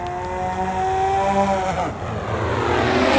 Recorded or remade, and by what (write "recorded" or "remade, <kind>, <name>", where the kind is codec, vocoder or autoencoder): recorded